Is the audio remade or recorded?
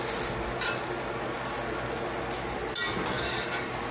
recorded